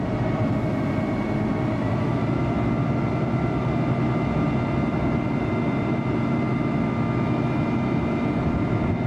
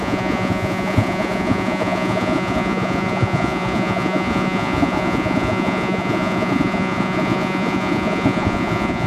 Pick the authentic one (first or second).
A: first